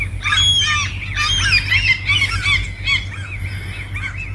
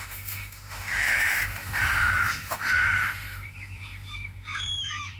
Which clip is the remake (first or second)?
second